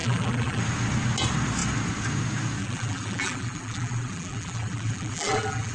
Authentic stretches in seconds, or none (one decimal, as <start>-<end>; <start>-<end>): 0.6-2.6